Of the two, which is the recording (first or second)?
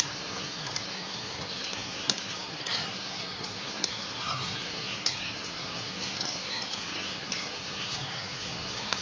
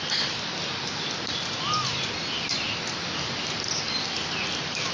second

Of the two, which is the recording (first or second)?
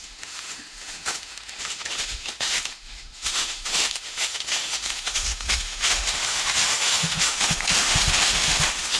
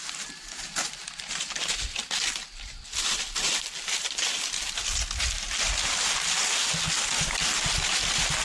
second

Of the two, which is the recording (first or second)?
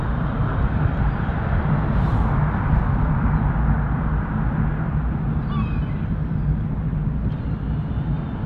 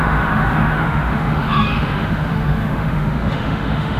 first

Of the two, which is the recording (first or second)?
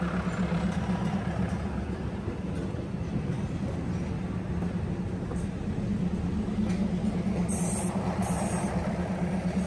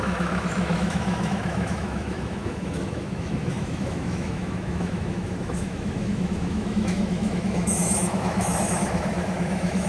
first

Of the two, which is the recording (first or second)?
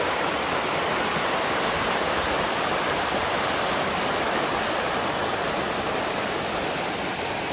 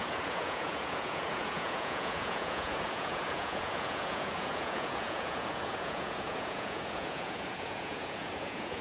first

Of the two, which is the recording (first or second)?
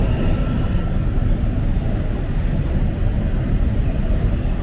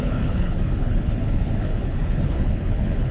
first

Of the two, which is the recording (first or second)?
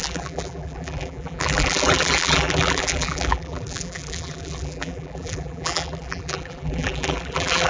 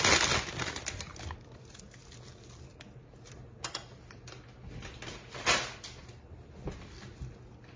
second